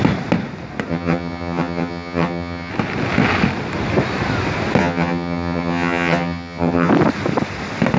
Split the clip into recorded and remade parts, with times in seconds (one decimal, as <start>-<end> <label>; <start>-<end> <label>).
0.0-0.9 recorded; 0.9-2.7 remade; 2.7-4.8 recorded; 4.8-6.9 remade; 6.9-8.0 recorded